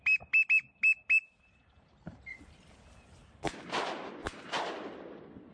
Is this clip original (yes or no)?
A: yes